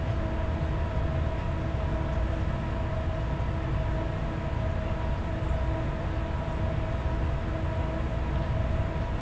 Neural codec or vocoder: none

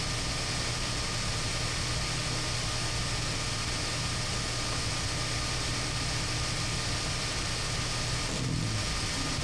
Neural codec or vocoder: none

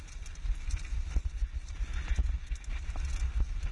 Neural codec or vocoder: none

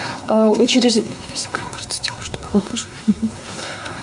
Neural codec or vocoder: codec, SNAC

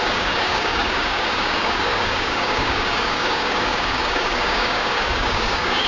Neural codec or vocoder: codec, DAC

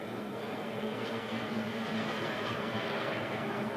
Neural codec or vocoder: codec, SNAC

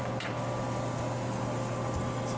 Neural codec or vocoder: none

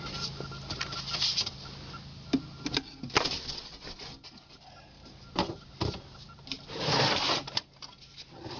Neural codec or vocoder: none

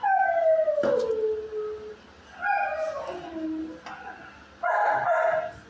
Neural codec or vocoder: none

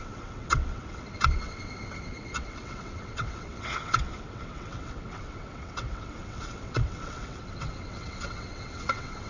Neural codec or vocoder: vocoder, WaveNeXt